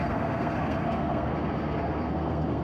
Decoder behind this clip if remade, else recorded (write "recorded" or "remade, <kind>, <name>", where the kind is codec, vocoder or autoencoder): remade, codec, SNAC